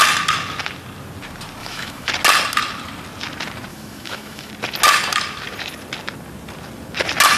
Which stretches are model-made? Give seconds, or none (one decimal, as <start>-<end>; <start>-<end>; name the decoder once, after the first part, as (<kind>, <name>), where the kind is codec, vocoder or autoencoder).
1.6-2.1 (autoencoder, DAC-VAE); 3.7-4.5